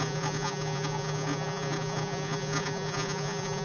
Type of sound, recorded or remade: remade